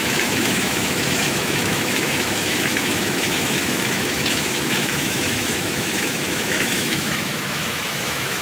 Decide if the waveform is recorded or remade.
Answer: remade